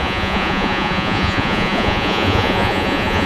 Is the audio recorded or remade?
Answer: remade